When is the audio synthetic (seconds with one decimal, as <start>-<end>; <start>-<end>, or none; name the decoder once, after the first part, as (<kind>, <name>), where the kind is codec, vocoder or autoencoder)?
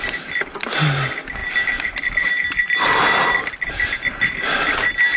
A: none